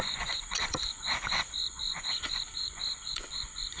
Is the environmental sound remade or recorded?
remade